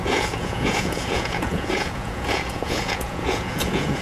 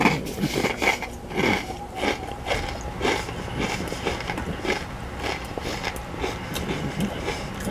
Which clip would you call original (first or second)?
second